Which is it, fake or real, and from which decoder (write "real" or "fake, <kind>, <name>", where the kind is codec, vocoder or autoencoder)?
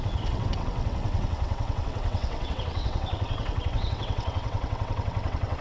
fake, vocoder, WaveNeXt